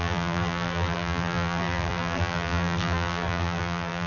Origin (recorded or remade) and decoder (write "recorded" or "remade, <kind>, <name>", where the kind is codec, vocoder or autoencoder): remade, vocoder, BigVGAN v2